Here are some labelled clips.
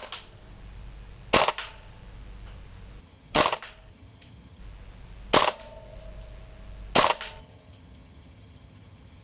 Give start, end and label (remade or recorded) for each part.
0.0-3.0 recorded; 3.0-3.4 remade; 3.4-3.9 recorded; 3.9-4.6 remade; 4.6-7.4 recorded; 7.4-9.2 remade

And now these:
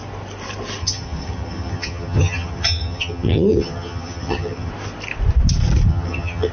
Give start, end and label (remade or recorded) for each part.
0.0-0.8 recorded; 0.8-4.7 remade; 4.7-5.9 recorded; 5.9-6.5 remade

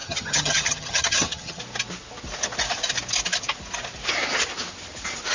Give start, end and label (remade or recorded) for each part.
0.0-1.6 remade; 1.6-5.3 recorded

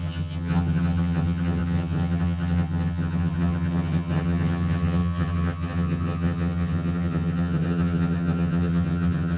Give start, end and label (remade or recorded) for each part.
0.0-9.4 remade

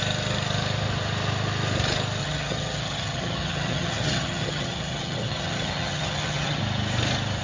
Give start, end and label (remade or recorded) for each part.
0.0-2.2 recorded; 2.2-6.6 remade; 6.6-7.4 recorded

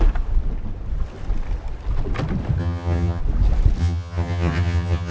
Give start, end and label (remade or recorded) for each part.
0.0-2.6 recorded; 2.6-3.2 remade; 3.2-3.8 recorded; 3.8-5.1 remade

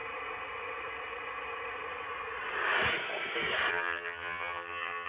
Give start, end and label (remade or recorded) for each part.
0.0-3.7 recorded; 3.7-5.1 remade